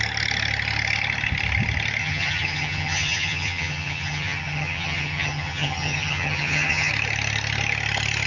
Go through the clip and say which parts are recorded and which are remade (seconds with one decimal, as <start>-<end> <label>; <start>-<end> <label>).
0.0-2.0 recorded; 2.0-6.9 remade; 6.9-8.3 recorded